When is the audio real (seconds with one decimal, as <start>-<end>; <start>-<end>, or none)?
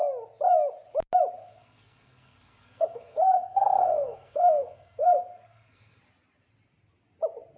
0.0-1.4; 6.0-7.6